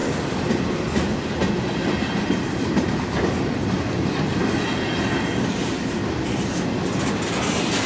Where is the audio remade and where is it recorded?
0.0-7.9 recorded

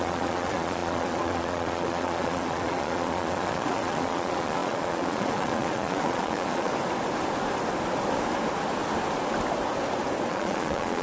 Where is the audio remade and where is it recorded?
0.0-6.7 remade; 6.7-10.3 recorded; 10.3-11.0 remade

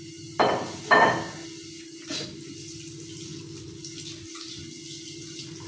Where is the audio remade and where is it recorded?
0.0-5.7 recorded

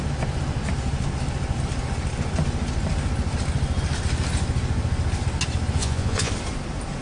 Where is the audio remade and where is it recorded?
0.0-5.8 recorded; 5.8-6.3 remade; 6.3-7.0 recorded

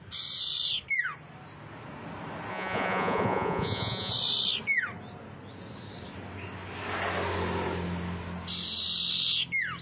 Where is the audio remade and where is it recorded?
0.0-2.5 recorded; 2.5-4.1 remade; 4.1-9.8 recorded

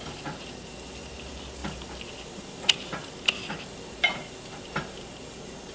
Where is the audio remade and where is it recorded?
0.0-5.7 recorded